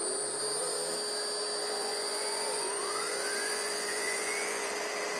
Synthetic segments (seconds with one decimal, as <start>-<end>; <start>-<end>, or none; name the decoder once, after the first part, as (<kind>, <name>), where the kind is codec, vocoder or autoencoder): 1.6-4.7 (vocoder, Vocos)